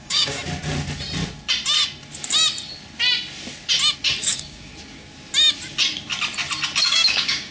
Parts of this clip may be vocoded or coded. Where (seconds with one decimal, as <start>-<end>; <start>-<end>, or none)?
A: 0.0-0.4; 4.2-4.7; 6.8-7.5